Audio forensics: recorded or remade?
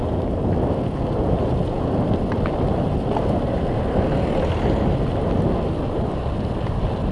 recorded